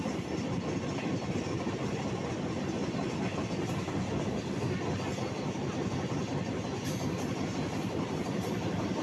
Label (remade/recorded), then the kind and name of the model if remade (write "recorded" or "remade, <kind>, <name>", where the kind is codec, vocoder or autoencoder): recorded